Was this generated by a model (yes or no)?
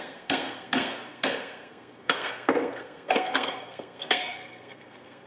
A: yes